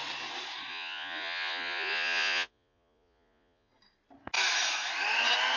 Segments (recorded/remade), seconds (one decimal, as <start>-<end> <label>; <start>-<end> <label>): 0.0-0.7 recorded; 0.7-3.7 remade; 3.7-5.6 recorded